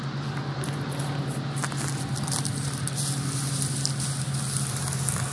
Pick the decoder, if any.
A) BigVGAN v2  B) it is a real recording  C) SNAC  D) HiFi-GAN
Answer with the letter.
B